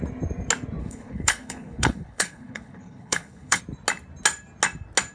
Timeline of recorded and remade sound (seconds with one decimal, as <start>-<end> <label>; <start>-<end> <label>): 0.0-0.8 recorded; 0.8-3.6 remade; 3.6-5.1 recorded